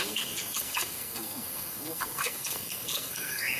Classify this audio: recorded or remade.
remade